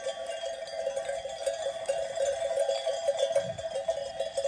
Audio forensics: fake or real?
real